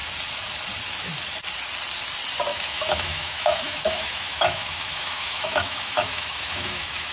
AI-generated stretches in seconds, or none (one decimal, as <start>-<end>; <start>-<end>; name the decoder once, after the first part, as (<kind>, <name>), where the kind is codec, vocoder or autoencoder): 2.5-7.1 (autoencoder, DAC-VAE)